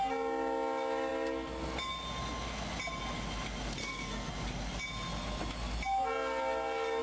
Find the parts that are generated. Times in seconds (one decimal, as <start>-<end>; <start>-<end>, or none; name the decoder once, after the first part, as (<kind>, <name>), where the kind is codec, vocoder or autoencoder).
3.8-4.3 (codec, SNAC)